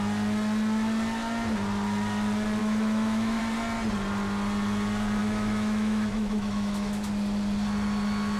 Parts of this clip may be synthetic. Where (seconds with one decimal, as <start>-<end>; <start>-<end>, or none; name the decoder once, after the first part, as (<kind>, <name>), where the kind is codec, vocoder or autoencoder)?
2.6-3.4 (autoencoder, DAC-VAE); 5.2-7.1